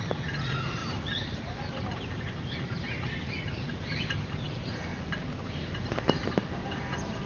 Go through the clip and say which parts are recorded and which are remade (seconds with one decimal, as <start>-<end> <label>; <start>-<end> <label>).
0.0-0.8 remade; 0.8-1.7 recorded; 1.7-4.9 remade; 4.9-6.6 recorded; 6.6-7.3 remade